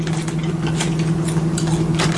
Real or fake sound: real